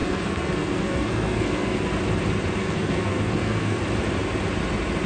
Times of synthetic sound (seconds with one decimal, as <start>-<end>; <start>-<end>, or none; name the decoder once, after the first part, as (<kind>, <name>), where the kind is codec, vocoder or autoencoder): 0.0-1.9 (codec, SNAC); 2.6-3.8